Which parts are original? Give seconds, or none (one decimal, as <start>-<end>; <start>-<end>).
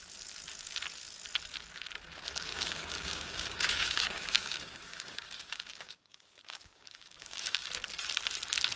0.0-2.5; 7.7-8.8